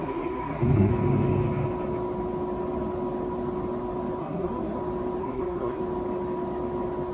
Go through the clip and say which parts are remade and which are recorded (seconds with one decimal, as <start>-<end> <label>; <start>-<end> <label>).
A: 0.0-0.9 remade; 0.9-4.2 recorded; 4.2-4.8 remade; 4.8-5.2 recorded; 5.2-5.8 remade; 5.8-7.1 recorded

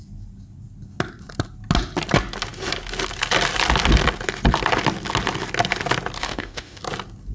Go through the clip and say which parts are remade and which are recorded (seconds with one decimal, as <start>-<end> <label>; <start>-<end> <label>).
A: 0.0-6.2 recorded; 6.2-6.8 remade; 6.8-7.3 recorded

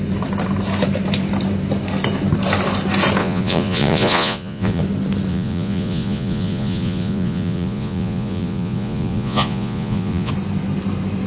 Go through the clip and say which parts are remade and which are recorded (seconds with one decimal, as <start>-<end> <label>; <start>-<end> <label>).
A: 0.0-3.2 recorded; 3.2-4.8 remade; 4.8-5.3 recorded; 5.3-10.3 remade; 10.3-11.3 recorded

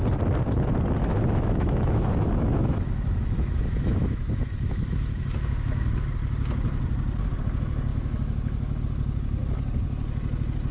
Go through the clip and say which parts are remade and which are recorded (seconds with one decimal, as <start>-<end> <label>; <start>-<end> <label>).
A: 0.0-1.1 recorded; 1.1-5.9 remade; 5.9-7.9 recorded; 7.9-8.8 remade; 8.8-10.7 recorded

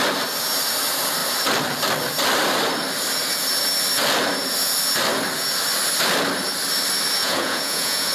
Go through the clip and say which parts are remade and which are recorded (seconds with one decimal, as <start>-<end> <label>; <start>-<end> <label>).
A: 0.0-7.2 recorded; 7.2-8.1 remade

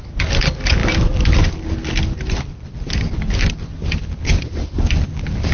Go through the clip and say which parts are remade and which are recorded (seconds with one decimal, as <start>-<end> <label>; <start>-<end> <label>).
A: 0.0-5.5 recorded

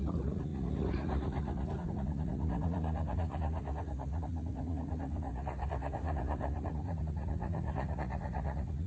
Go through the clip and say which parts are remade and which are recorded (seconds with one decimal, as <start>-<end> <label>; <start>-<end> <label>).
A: 0.0-8.9 remade

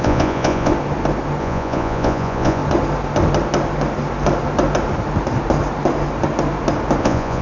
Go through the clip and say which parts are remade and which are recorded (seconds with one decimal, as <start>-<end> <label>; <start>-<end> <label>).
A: 0.0-0.7 remade; 0.7-1.4 recorded; 1.4-2.6 remade; 2.6-7.0 recorded; 7.0-7.4 remade